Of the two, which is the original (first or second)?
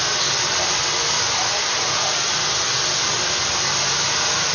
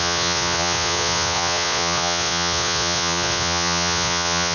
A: first